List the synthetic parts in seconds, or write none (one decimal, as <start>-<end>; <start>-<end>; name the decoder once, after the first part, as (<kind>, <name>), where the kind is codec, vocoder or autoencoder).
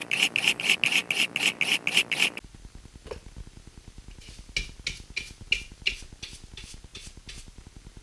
6.9-7.6 (vocoder, BigVGAN v2)